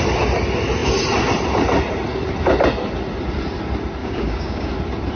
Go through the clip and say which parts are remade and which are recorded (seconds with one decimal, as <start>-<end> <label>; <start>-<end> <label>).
0.0-4.0 recorded; 4.0-4.7 remade; 4.7-5.2 recorded

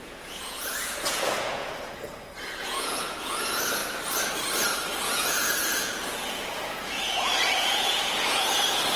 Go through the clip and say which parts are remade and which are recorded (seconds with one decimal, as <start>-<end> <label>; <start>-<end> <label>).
0.0-3.8 remade; 3.8-4.9 recorded; 4.9-9.0 remade